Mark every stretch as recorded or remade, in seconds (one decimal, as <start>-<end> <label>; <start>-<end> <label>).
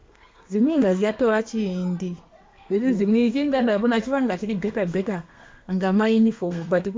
0.0-1.4 remade; 1.4-2.5 recorded; 2.5-7.0 remade